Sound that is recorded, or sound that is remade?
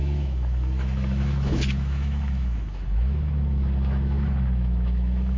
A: remade